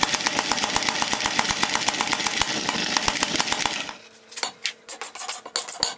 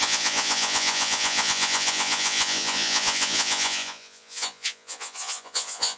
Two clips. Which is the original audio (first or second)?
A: first